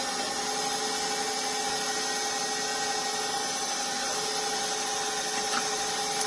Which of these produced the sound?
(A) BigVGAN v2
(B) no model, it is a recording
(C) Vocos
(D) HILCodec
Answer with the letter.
B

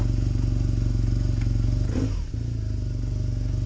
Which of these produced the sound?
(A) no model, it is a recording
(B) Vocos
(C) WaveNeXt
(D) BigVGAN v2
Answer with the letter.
A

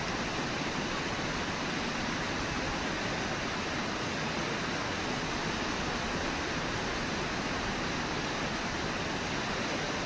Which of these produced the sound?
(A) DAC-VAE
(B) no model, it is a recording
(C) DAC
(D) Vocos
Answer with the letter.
B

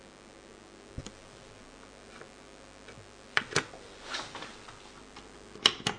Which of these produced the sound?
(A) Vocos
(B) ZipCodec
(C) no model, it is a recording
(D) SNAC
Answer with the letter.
C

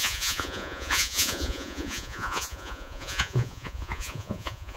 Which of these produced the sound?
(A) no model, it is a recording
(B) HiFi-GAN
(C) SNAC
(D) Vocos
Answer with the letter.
D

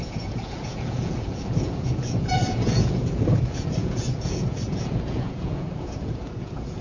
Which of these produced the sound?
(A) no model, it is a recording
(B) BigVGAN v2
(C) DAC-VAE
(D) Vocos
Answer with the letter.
D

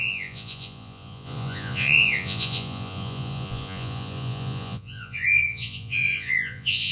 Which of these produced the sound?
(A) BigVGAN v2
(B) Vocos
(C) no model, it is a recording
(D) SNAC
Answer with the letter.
B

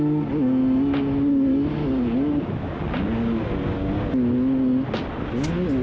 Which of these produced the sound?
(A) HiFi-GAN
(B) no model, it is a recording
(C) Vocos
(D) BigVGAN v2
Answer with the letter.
B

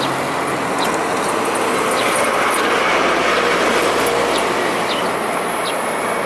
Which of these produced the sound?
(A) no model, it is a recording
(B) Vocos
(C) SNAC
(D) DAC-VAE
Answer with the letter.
A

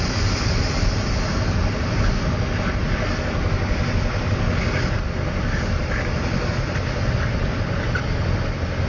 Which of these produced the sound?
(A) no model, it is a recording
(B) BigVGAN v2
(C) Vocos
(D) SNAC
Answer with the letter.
A